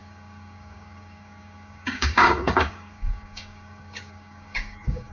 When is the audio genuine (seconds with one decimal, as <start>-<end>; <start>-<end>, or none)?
none